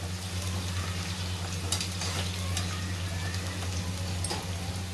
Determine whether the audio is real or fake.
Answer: real